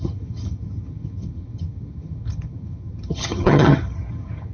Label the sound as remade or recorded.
remade